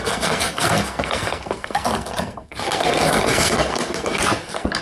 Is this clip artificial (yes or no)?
yes